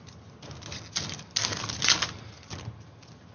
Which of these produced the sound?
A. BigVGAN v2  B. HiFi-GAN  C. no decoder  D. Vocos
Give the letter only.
C